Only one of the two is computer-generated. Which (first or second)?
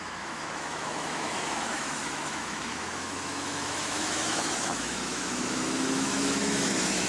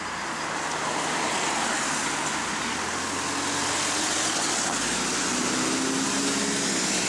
first